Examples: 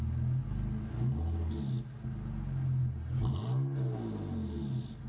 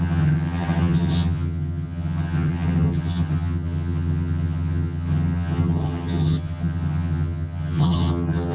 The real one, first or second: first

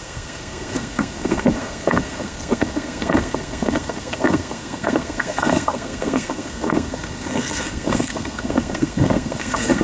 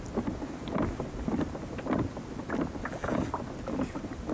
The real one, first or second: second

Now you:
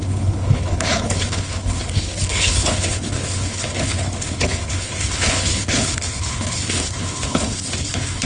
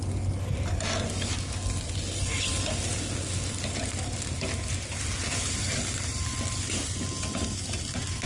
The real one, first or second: second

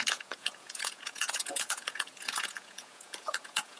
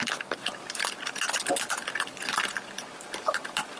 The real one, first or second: second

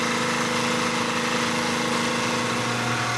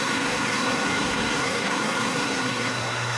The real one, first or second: first